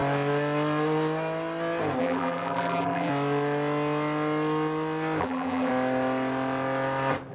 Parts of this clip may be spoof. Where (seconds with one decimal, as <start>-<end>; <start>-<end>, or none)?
2.0-3.1; 5.2-5.7